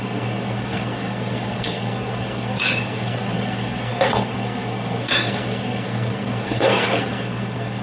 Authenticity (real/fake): fake